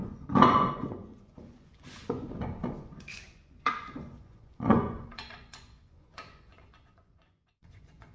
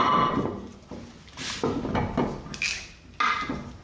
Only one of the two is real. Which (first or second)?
second